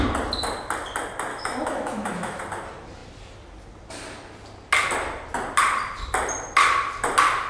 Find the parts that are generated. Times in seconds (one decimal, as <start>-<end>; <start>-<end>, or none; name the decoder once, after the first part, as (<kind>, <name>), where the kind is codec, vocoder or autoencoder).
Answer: 1.3-2.4 (autoencoder, DAC-VAE)